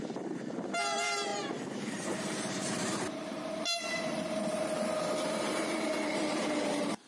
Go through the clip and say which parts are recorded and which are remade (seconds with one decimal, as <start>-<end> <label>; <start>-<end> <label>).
0.0-7.1 remade